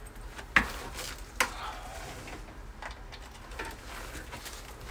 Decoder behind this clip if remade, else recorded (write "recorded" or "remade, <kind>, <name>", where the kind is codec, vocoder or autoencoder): recorded